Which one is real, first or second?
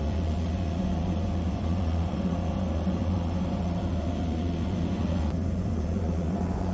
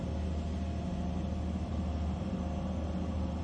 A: second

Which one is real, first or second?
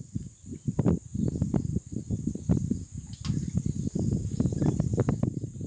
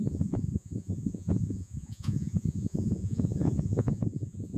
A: first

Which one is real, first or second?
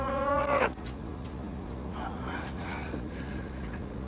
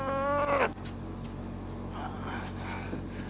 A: second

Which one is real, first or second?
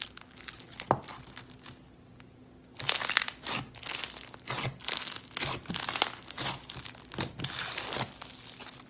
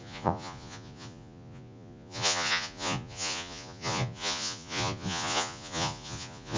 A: first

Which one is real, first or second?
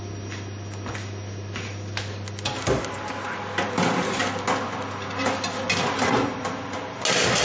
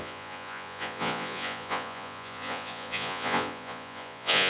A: first